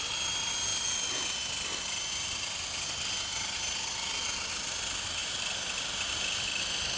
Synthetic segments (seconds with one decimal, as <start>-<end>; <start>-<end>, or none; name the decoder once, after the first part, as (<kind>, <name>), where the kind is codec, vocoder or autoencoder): none